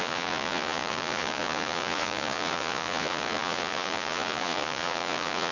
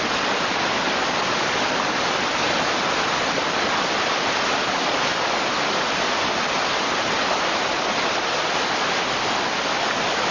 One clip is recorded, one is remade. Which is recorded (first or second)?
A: second